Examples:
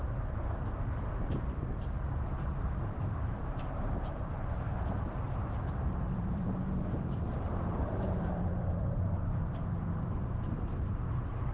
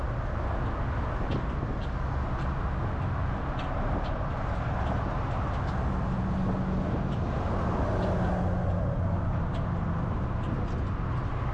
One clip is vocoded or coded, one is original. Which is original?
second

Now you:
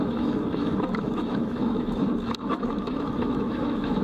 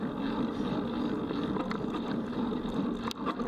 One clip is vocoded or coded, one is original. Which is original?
second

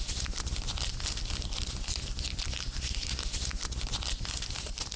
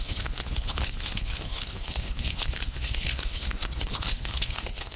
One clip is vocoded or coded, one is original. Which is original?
first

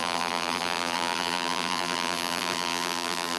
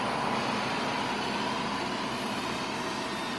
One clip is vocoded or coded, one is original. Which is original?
second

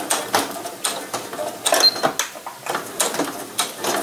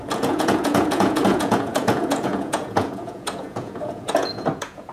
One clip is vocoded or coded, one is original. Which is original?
first